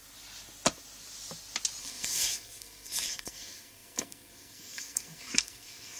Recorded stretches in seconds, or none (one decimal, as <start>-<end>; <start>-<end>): 0.0-1.8